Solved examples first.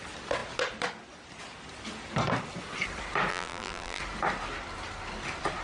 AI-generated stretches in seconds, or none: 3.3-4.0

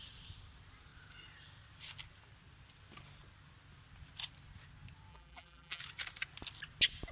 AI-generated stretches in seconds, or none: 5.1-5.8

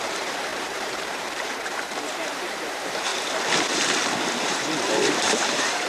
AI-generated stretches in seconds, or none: 0.0-3.1; 4.3-5.9

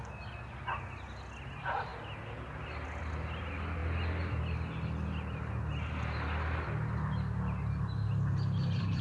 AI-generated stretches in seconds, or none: none

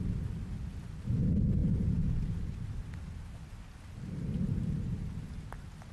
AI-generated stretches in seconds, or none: 1.6-2.7